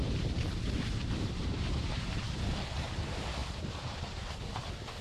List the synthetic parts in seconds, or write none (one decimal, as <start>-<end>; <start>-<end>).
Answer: 0.0-2.8; 3.4-4.6